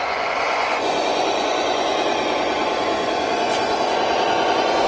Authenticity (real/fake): fake